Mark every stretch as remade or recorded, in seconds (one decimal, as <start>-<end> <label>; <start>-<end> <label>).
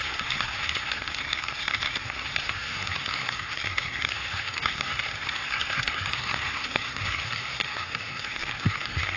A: 0.0-9.2 remade